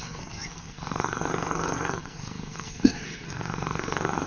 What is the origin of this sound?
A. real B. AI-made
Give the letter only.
B